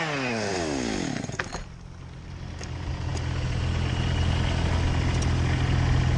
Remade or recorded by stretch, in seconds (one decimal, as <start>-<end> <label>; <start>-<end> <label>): 0.0-6.2 recorded